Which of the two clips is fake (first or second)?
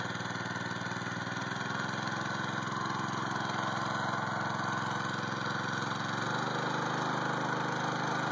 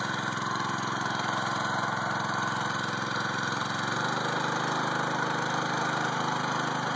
second